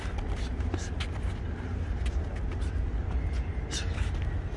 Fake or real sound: real